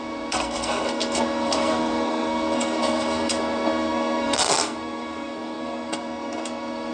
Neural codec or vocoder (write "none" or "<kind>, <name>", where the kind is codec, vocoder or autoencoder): codec, SNAC